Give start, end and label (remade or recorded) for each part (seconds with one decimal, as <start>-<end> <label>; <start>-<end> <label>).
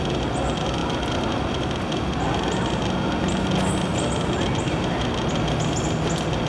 0.0-3.9 recorded; 3.9-5.1 remade; 5.1-6.5 recorded